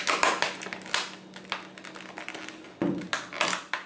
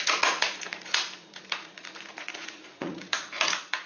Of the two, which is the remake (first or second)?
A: second